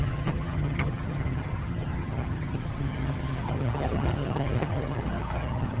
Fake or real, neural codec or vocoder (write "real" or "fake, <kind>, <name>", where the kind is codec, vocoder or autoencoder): fake, vocoder, HiFi-GAN